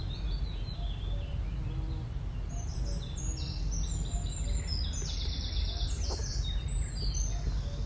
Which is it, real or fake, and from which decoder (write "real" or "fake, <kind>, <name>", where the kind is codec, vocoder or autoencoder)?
real